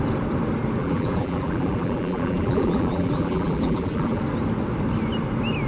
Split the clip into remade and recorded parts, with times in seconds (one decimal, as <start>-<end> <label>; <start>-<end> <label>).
0.0-0.8 recorded; 0.8-4.2 remade; 4.2-5.7 recorded